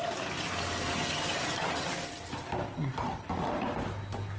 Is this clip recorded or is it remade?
recorded